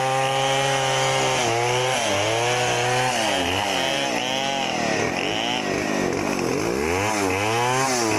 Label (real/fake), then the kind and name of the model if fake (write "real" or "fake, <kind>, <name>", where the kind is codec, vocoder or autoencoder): real